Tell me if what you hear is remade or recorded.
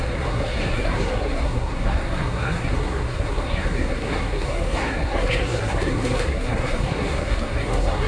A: remade